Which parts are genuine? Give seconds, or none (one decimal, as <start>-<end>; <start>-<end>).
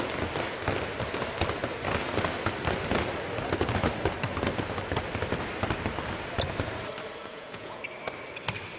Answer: 0.0-7.2; 7.8-8.8